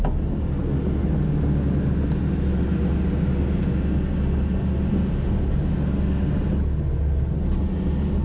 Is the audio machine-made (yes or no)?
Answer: no